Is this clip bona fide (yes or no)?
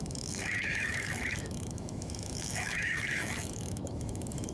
no